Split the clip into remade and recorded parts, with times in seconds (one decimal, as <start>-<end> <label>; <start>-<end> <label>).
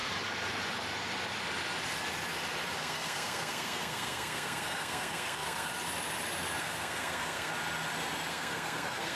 0.0-2.8 recorded; 2.8-5.7 remade; 5.7-6.6 recorded; 6.6-7.5 remade; 7.5-8.3 recorded; 8.3-9.2 remade